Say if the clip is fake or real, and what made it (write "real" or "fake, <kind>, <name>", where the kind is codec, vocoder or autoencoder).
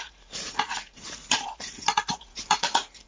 fake, vocoder, Vocos